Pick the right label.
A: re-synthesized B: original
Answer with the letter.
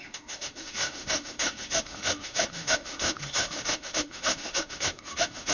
A